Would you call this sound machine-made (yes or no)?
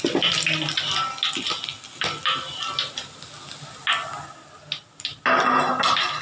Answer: no